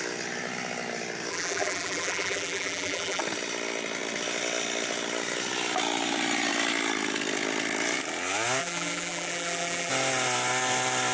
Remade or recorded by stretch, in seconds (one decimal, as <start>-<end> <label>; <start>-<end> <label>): 0.0-1.3 recorded; 1.3-3.2 remade; 3.2-8.6 recorded; 8.6-9.9 remade; 9.9-11.1 recorded